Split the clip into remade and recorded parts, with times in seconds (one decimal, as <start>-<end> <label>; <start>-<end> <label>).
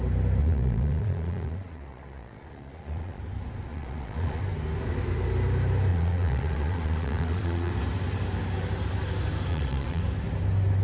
0.0-0.4 recorded; 0.4-3.2 remade; 3.2-3.7 recorded; 3.7-4.4 remade; 4.4-5.9 recorded; 5.9-7.7 remade; 7.7-9.5 recorded; 9.5-10.0 remade; 10.0-10.8 recorded